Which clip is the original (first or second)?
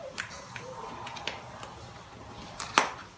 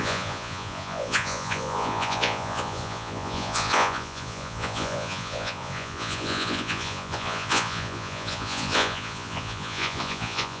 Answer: first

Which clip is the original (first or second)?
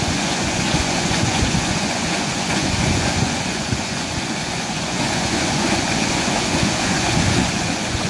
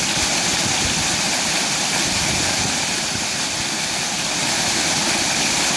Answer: second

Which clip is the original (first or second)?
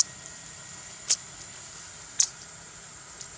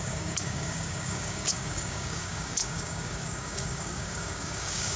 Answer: first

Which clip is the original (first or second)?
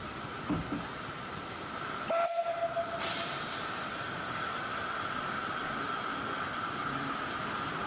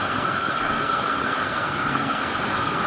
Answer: first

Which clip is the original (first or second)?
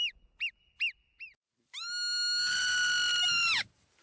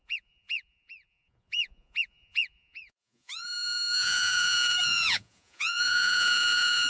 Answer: first